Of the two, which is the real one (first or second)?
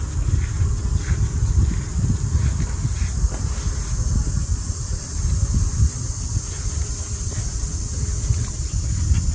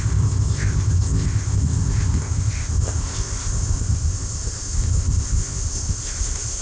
first